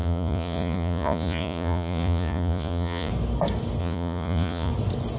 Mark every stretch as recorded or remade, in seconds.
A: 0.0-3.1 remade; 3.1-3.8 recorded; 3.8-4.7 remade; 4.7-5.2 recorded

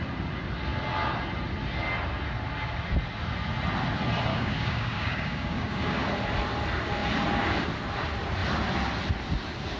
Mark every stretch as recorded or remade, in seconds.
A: 0.0-4.3 recorded; 4.3-6.0 remade; 6.0-9.8 recorded